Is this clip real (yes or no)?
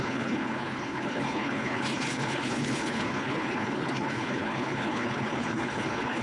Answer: no